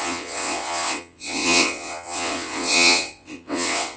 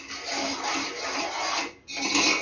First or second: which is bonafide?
second